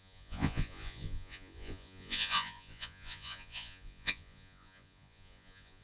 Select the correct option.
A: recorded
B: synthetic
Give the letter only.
B